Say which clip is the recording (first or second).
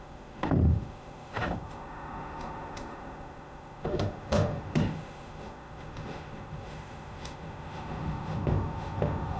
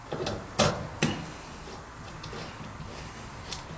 second